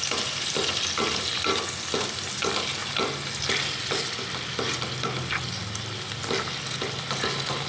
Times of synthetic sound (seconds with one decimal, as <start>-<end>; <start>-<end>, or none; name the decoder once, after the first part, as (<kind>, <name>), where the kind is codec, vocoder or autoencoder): none